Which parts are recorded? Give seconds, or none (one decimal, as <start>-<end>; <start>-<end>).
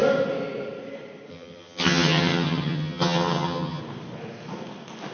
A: 0.0-1.3; 3.8-5.1